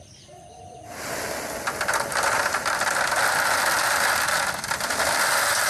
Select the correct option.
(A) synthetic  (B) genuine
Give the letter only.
B